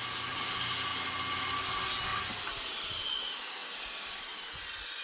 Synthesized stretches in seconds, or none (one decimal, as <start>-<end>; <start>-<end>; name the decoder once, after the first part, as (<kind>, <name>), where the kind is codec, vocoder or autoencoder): 0.9-1.5 (vocoder, BigVGAN v2); 2.1-3.0; 3.6-4.4

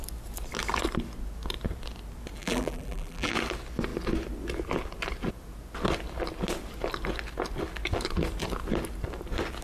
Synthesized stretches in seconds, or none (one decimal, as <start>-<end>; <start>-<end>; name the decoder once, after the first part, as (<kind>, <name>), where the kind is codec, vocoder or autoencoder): 2.4-3.3 (vocoder, BigVGAN v2)

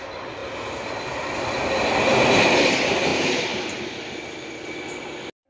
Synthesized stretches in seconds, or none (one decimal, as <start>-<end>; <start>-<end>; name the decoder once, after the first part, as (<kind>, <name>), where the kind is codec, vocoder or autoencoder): 3.1-3.8 (vocoder, BigVGAN v2)